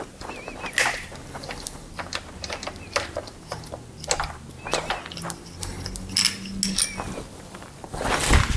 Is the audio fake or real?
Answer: real